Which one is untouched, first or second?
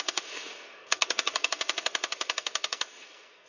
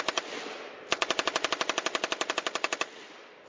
second